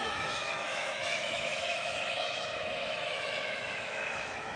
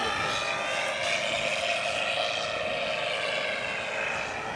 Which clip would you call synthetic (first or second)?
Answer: first